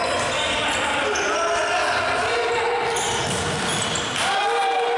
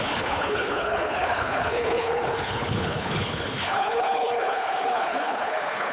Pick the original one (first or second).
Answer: first